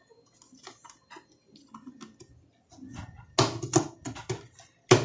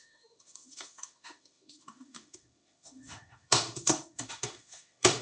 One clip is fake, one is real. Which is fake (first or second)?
second